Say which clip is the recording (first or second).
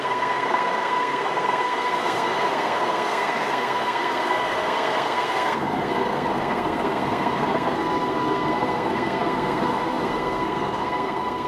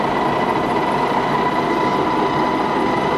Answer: second